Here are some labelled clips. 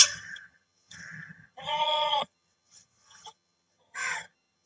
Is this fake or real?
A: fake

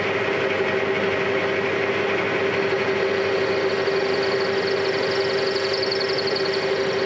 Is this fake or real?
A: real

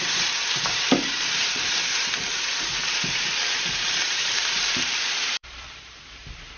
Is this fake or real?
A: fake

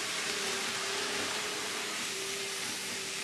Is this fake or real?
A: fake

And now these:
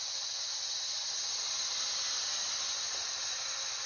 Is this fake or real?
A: real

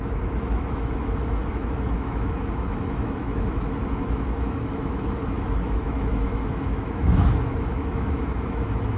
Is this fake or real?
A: fake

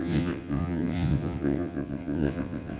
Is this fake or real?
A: fake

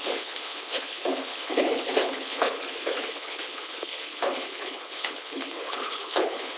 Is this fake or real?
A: fake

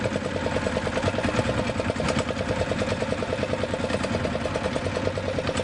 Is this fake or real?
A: real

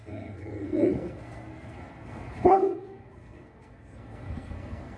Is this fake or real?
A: fake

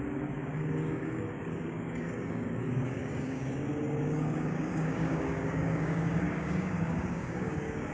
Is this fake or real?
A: fake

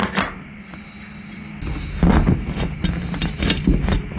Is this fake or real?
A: real